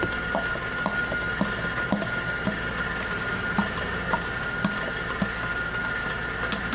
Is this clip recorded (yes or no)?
yes